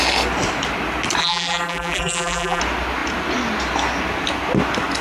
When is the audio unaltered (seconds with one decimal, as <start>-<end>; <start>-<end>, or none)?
0.0-1.2; 2.6-5.0